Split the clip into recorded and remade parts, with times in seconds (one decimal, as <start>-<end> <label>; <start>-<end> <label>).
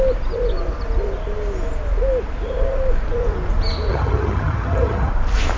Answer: 0.0-3.9 recorded; 3.9-5.1 remade; 5.1-5.6 recorded